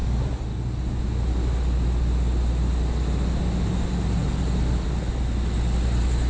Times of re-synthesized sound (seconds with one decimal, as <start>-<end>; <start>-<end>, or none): none